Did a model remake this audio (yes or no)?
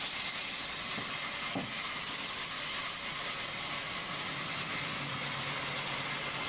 no